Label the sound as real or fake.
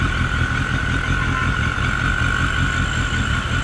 real